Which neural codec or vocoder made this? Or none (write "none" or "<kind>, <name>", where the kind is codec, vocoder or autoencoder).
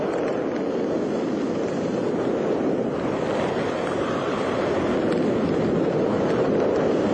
none